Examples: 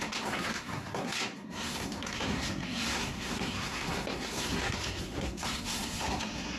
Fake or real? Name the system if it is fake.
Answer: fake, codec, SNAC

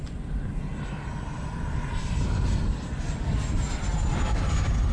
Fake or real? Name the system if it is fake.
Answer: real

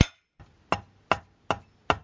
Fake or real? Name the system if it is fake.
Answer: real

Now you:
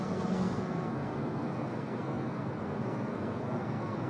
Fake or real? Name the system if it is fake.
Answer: fake, codec, SNAC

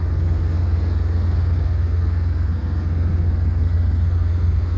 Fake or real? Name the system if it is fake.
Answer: fake, codec, SNAC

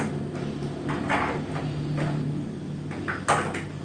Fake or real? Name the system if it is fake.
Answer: real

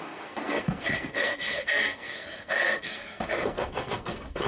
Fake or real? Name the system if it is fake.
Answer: fake, codec, SNAC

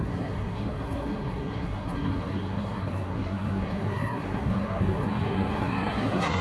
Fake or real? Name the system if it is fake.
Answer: fake, codec, SNAC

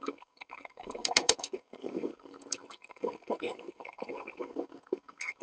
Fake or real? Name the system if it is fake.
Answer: fake, codec, SNAC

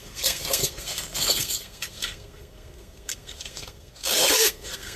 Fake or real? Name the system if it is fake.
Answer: fake, codec, SNAC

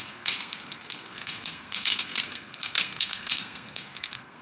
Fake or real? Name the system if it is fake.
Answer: fake, codec, SNAC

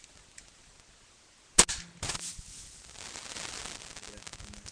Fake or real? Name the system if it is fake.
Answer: real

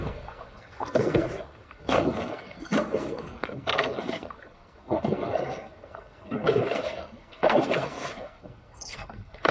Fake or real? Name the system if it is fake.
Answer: fake, codec, SNAC